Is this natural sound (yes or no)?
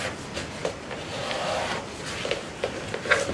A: yes